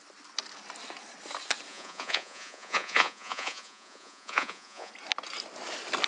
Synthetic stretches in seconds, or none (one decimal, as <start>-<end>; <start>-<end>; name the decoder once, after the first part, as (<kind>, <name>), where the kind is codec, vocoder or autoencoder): 1.7-4.9 (vocoder, Vocos)